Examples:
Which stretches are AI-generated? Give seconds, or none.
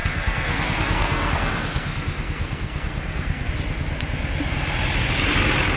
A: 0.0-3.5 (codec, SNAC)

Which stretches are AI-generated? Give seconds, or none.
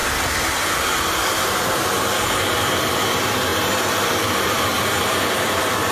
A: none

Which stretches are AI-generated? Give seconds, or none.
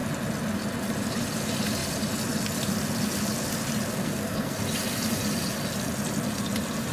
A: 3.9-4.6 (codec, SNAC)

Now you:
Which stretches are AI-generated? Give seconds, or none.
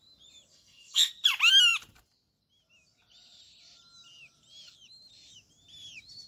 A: 0.5-1.1 (codec, SNAC)